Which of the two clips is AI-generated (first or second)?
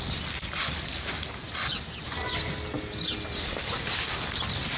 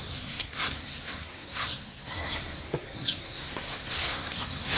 second